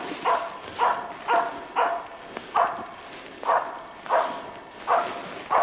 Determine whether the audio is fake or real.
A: real